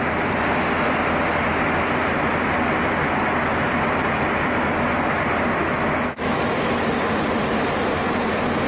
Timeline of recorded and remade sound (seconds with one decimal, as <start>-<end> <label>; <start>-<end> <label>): 0.0-5.6 recorded; 5.6-6.4 remade; 6.4-8.7 recorded